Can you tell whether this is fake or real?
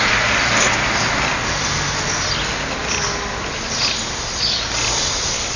real